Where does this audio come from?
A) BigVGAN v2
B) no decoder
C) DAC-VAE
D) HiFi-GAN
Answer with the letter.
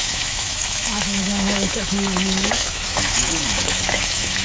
C